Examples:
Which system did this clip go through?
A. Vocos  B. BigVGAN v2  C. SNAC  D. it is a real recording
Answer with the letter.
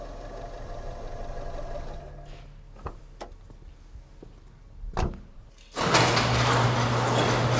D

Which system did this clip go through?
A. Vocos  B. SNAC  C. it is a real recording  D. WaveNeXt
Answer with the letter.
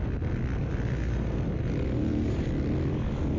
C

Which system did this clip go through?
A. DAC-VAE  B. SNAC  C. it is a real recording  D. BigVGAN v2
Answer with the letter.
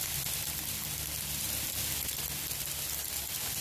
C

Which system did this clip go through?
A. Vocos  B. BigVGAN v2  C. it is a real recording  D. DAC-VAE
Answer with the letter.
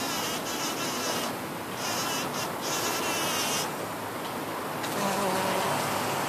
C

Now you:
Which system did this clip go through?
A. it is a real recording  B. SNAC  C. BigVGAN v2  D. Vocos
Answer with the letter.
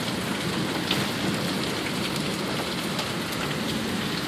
A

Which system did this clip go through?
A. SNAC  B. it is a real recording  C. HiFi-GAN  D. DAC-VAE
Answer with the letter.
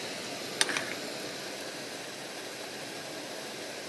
B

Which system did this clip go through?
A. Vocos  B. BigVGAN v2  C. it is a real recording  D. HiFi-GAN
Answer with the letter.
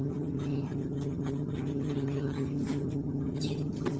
D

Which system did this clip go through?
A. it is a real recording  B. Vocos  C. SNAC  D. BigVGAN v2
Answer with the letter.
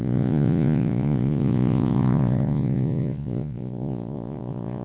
B